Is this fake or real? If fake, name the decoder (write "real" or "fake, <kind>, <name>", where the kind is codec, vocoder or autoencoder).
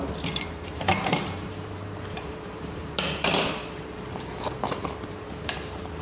fake, vocoder, BigVGAN v2